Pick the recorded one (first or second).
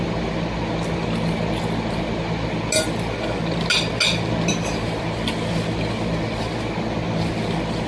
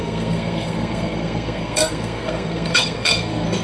first